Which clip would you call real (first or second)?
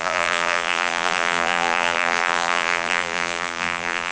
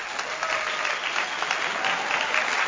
second